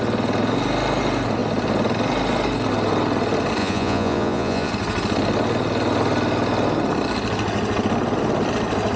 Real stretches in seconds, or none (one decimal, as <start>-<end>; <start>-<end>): 0.0-3.6; 4.7-9.0